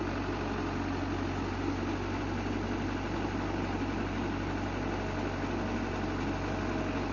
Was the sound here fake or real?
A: real